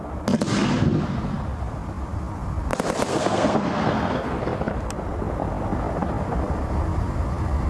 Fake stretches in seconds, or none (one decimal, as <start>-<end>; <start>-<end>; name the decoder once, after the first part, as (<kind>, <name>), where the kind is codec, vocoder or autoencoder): 3.1-4.4 (codec, SNAC)